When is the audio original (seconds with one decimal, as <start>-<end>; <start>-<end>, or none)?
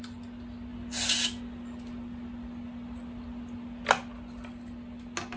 0.0-5.4